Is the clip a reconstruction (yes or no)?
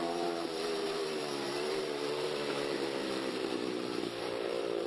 yes